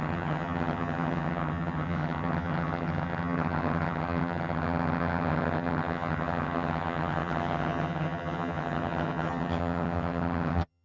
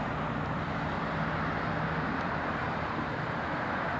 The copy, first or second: first